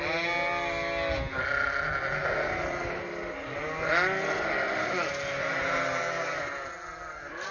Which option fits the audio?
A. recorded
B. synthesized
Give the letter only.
A